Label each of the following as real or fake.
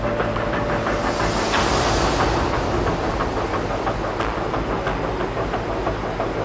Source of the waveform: real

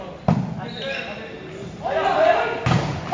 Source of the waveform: real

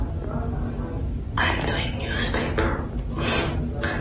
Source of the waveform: real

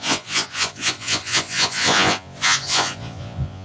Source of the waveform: fake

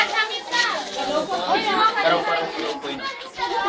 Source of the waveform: real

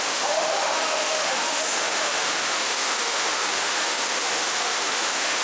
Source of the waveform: fake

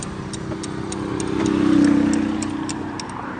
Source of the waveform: real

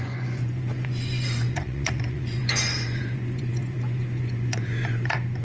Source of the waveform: fake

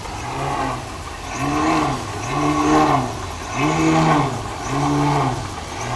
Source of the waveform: real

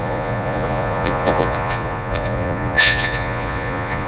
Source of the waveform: fake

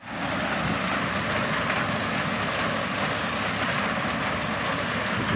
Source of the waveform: real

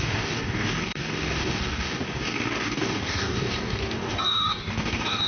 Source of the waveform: fake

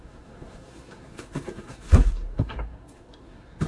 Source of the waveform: fake